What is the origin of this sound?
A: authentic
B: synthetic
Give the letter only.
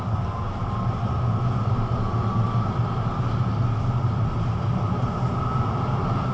A